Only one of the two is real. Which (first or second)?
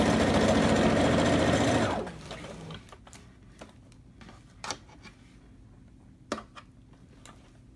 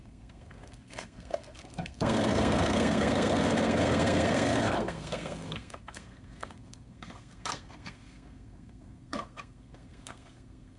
first